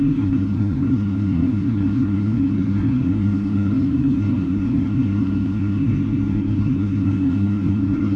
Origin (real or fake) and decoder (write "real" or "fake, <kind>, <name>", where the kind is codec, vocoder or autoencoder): fake, codec, SNAC